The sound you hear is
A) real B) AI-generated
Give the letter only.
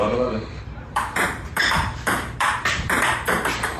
B